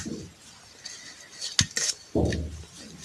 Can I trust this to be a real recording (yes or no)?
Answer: yes